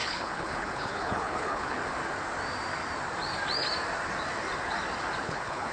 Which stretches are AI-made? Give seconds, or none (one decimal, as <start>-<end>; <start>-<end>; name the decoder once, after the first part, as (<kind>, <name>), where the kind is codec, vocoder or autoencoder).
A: 0.0-1.8 (codec, HILCodec); 5.2-5.7

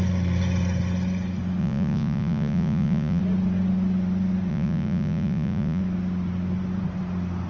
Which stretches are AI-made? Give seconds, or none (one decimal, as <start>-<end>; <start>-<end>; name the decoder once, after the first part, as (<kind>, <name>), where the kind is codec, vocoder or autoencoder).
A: 1.6-3.2 (vocoder, Vocos); 4.5-5.8